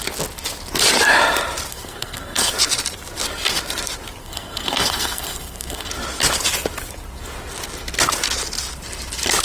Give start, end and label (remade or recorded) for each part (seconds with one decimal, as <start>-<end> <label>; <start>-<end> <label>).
0.0-1.7 recorded; 1.7-2.5 remade; 2.5-4.2 recorded; 4.2-5.9 remade; 5.9-9.4 recorded